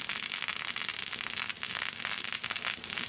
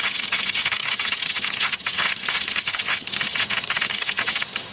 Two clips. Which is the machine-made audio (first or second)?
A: second